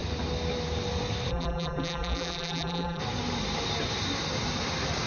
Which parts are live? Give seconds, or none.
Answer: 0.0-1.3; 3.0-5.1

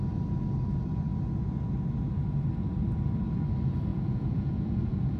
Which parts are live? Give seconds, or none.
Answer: 0.0-3.9

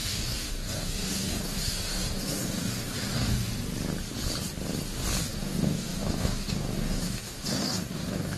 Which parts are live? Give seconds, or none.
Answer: 3.5-5.2